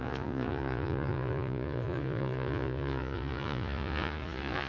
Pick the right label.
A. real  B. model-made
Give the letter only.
B